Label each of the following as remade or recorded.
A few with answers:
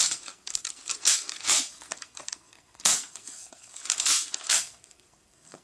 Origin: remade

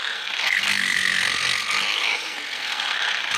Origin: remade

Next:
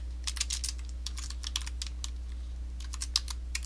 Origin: recorded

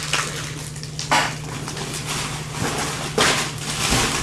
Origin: recorded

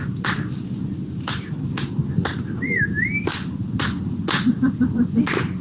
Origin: recorded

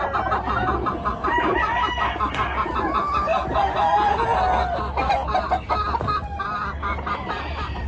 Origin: recorded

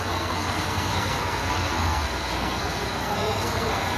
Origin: remade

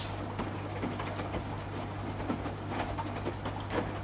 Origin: recorded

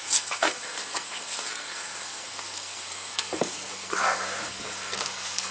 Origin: remade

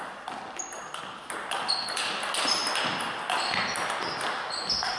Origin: recorded